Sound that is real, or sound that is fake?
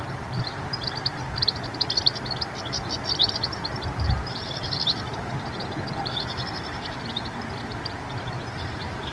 real